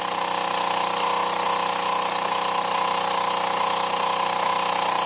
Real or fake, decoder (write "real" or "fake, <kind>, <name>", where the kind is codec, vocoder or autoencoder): real